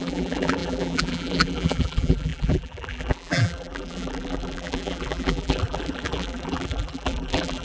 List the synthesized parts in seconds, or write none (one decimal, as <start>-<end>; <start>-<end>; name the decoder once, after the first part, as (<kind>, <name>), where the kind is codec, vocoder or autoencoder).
0.0-7.6 (vocoder, BigVGAN v2)